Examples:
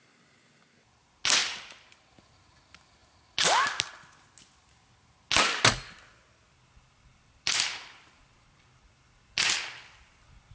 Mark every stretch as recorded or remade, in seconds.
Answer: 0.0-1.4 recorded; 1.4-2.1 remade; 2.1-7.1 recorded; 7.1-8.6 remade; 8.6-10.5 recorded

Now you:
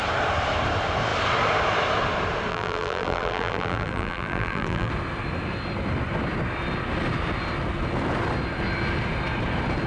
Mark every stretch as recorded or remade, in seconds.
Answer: 0.0-2.5 recorded; 2.5-4.9 remade; 4.9-9.9 recorded

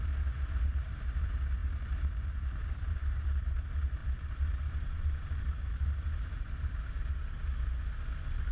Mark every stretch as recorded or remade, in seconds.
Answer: 0.0-3.0 recorded; 3.0-3.5 remade; 3.5-4.0 recorded; 4.0-7.1 remade; 7.1-8.5 recorded

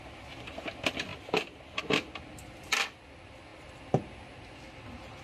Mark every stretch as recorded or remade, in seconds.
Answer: 0.0-5.2 recorded

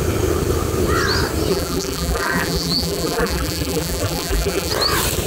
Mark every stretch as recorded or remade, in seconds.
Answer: 0.0-1.5 recorded; 1.5-4.7 remade; 4.7-5.3 recorded

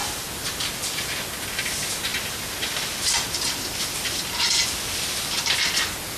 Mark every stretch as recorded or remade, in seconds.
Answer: 0.0-1.3 remade; 1.3-2.1 recorded; 2.1-5.8 remade; 5.8-6.2 recorded